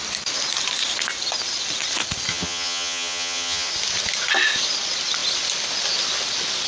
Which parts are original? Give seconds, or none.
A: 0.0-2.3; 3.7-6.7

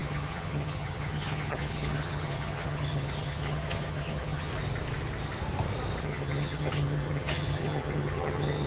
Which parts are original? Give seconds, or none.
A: 4.5-6.0

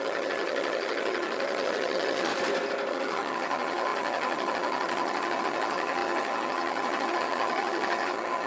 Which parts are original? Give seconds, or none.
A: 2.3-2.9

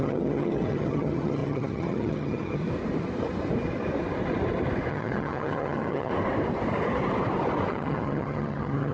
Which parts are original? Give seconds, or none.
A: 2.6-4.9; 6.1-7.7